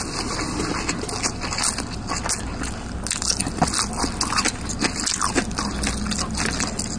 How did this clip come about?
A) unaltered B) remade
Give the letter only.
A